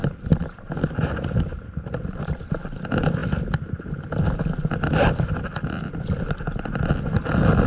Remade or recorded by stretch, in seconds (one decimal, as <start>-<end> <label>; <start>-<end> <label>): 0.0-0.7 remade; 0.7-1.5 recorded; 1.5-2.4 remade; 2.4-7.7 recorded